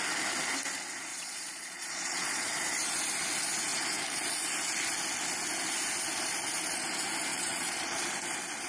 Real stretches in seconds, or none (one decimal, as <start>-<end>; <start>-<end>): 0.0-1.1; 2.5-7.3; 8.1-8.7